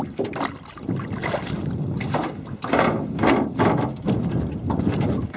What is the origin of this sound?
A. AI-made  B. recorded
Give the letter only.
B